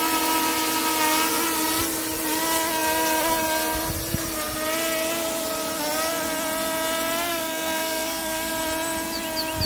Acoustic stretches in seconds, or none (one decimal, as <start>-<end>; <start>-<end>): 0.0-7.3; 8.5-9.7